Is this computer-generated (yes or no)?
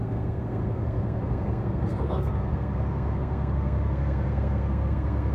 yes